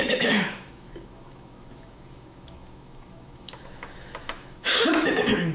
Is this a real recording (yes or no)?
no